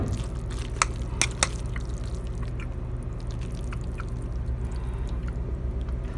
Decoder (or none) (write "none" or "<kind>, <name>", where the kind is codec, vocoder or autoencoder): none